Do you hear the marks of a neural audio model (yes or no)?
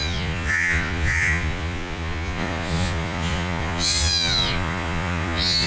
yes